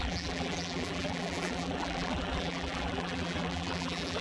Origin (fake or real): fake